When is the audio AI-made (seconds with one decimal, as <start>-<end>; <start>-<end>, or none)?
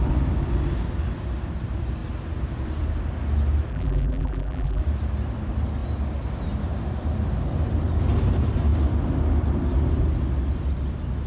3.7-4.8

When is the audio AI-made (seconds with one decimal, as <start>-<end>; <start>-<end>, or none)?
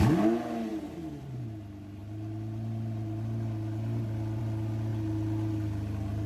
0.7-1.4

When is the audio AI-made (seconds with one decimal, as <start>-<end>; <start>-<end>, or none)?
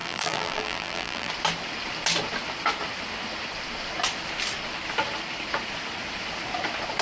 0.0-1.3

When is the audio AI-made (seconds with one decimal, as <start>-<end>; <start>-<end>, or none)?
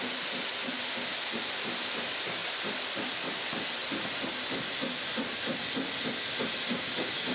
2.4-3.1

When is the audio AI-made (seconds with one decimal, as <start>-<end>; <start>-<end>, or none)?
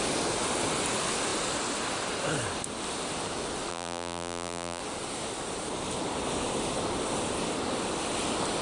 3.7-4.8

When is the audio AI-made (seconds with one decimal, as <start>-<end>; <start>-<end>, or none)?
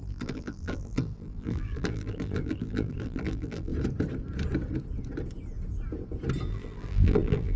0.0-3.7; 6.4-7.6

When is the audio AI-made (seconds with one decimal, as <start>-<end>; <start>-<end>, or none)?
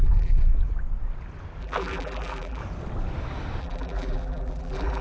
0.0-0.5; 1.6-2.6; 3.6-5.0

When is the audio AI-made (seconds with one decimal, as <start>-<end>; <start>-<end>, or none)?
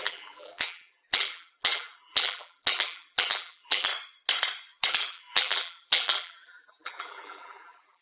0.0-3.9; 4.9-8.0